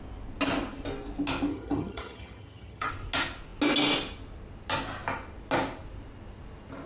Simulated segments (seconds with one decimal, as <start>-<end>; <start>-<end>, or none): 1.5-2.9